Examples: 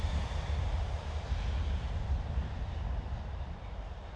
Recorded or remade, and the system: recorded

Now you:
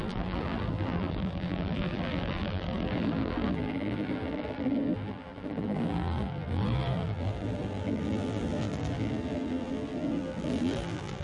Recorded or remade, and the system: remade, vocoder, BigVGAN v2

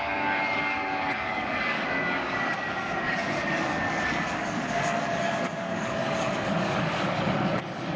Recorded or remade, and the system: remade, codec, DAC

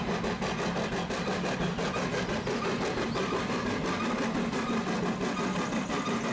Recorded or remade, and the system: recorded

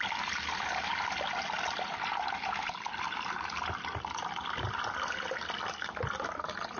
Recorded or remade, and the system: recorded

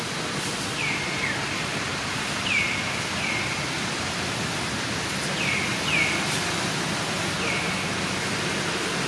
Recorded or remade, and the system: remade, vocoder, BigVGAN v2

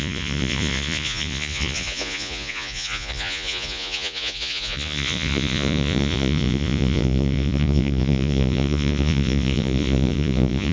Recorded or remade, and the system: remade, vocoder, Vocos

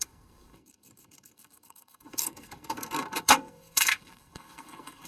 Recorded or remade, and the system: remade, codec, SNAC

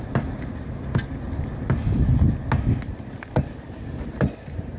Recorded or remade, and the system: recorded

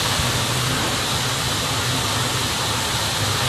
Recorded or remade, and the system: recorded